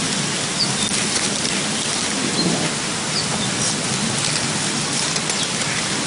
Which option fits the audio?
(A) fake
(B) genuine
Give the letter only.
B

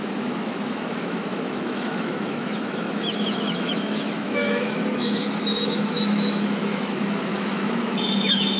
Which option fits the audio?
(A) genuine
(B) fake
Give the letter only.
B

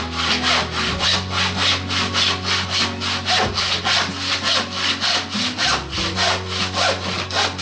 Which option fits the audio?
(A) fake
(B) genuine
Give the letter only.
B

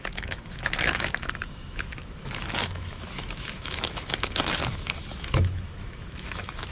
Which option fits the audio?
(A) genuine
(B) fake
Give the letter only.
B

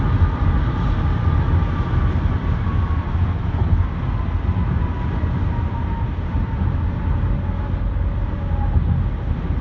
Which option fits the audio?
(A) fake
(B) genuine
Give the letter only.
B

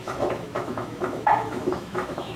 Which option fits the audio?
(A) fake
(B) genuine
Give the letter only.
A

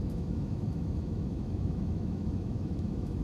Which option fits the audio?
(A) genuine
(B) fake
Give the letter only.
B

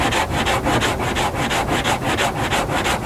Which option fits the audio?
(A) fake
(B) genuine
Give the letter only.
B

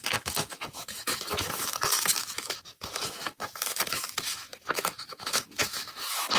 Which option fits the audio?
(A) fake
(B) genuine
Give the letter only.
A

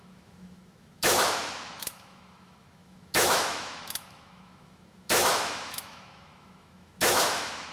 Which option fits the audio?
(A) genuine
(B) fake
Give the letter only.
B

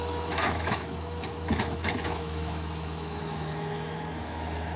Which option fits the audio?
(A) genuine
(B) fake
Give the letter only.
B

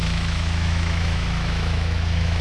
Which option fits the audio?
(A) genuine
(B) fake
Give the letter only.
B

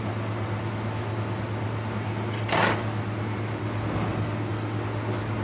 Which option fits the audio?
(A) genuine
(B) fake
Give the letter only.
A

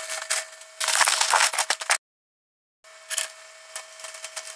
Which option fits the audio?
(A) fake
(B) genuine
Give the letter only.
B